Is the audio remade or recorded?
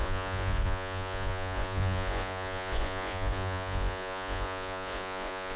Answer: remade